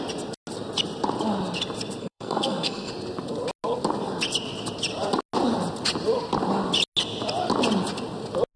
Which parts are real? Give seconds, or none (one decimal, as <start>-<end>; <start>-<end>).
0.0-2.0; 2.9-8.6